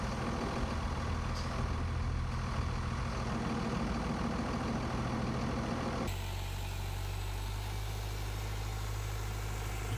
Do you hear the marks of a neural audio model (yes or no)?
no